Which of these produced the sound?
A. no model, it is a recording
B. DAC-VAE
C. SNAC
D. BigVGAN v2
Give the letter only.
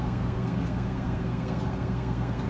C